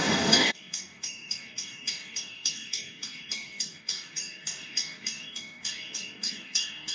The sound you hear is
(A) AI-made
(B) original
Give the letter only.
A